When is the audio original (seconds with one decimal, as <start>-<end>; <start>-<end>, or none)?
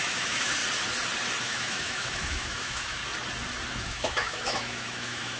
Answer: 0.6-1.4; 3.0-3.7